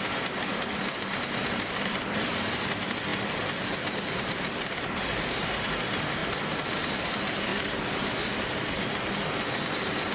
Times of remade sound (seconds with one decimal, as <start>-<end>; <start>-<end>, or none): 0.0-10.1